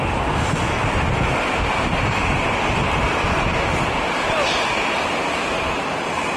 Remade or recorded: recorded